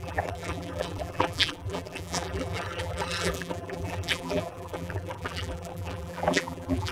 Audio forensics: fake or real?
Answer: fake